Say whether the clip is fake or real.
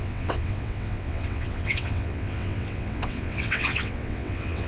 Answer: fake